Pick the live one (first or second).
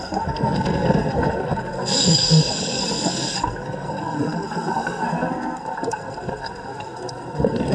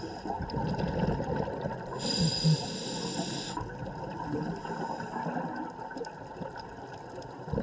second